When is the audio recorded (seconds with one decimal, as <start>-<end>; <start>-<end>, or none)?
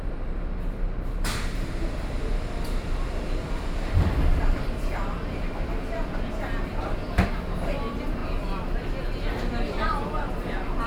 8.2-9.3